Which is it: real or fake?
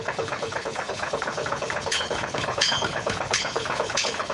fake